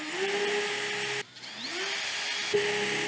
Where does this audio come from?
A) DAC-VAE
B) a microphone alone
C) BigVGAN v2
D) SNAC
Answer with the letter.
B